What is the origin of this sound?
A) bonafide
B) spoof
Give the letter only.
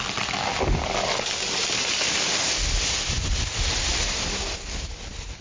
A